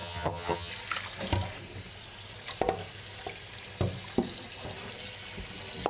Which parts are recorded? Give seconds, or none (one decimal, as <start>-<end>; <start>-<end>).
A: 0.7-5.9